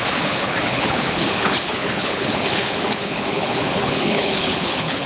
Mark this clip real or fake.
fake